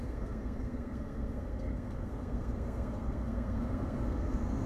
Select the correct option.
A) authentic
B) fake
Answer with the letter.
B